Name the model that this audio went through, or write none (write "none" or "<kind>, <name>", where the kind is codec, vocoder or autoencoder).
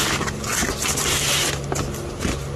none